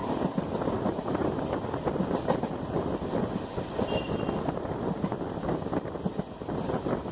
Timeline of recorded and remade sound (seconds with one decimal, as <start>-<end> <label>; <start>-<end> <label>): 0.0-7.1 recorded